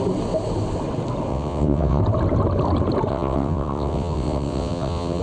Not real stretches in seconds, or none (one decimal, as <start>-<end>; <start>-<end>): 1.3-2.0; 3.1-5.2